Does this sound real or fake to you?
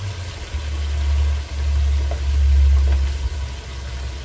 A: real